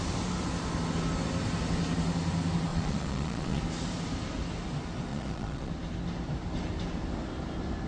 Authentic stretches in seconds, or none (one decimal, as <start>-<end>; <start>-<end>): 0.0-2.7; 3.6-5.1; 5.7-7.9